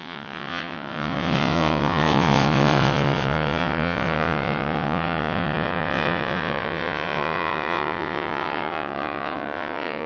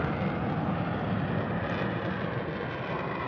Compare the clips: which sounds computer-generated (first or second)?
first